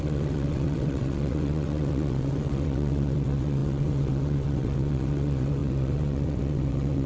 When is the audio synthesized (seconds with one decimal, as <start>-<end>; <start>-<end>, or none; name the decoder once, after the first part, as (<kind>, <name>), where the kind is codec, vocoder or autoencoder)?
0.0-7.1 (vocoder, WaveNeXt)